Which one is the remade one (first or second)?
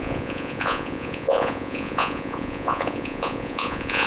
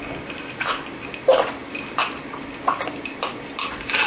first